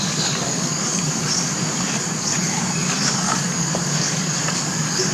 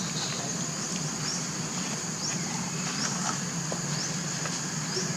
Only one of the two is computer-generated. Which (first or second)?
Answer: first